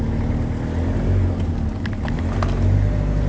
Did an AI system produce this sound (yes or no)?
no